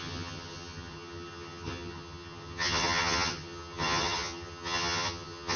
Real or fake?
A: fake